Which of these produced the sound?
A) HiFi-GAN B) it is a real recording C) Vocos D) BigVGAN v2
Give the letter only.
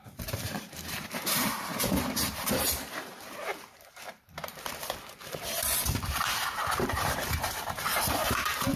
D